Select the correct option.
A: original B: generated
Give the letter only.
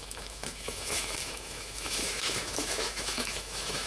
B